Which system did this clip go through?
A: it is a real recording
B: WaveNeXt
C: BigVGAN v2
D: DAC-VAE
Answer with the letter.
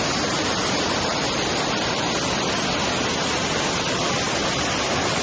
A